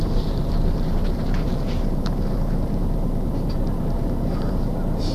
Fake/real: fake